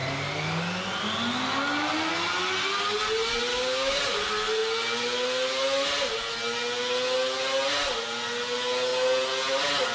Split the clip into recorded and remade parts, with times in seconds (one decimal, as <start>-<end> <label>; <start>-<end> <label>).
0.0-3.5 recorded; 3.5-4.0 remade; 4.0-9.9 recorded